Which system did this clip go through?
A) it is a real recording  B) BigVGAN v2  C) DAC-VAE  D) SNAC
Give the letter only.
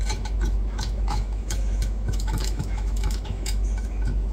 C